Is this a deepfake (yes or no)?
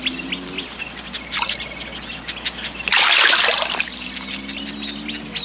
no